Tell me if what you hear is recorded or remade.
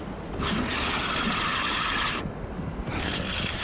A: recorded